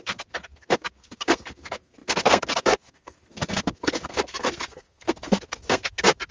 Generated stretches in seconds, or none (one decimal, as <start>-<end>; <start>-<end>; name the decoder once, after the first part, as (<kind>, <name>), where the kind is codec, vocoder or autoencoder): 0.0-6.3 (codec, SNAC)